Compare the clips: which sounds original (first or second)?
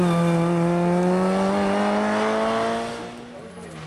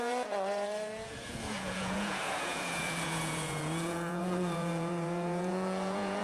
first